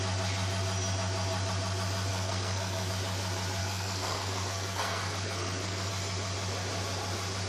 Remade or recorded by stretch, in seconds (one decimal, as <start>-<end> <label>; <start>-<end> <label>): 0.0-2.1 recorded; 2.1-2.9 remade; 2.9-3.6 recorded; 3.6-5.9 remade; 5.9-7.5 recorded